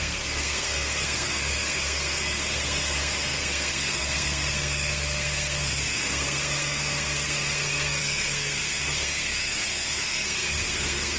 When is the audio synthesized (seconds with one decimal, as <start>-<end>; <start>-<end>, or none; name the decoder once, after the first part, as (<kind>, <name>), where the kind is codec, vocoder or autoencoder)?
0.0-11.2 (codec, SNAC)